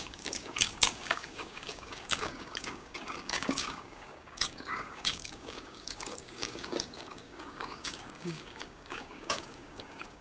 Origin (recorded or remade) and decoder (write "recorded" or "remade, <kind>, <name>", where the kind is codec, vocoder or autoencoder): remade, codec, DAC